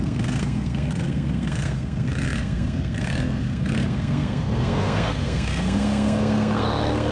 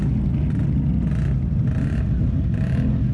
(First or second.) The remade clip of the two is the first